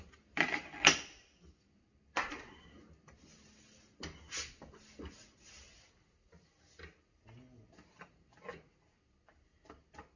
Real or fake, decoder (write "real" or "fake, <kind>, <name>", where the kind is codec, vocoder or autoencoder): real